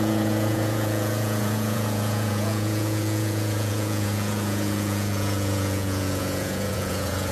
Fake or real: fake